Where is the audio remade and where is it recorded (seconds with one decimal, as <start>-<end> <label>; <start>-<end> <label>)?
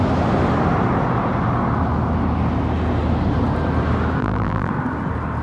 0.0-4.2 recorded; 4.2-4.7 remade; 4.7-5.4 recorded